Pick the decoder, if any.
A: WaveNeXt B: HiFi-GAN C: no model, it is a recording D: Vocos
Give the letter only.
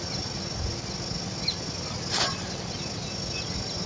C